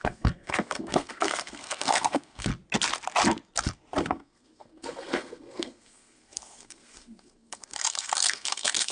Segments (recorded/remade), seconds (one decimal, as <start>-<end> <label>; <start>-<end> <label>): 0.0-2.5 remade; 2.5-4.0 recorded; 4.0-8.9 remade